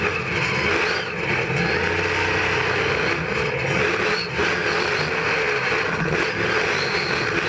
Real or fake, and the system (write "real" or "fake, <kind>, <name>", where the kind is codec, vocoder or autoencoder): real